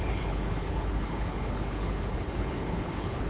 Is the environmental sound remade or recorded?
remade